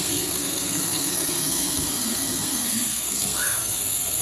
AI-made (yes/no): yes